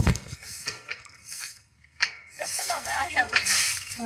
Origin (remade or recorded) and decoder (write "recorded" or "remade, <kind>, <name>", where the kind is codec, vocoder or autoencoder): remade, codec, SNAC